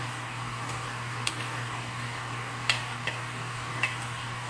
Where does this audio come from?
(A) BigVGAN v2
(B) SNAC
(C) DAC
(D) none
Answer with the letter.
C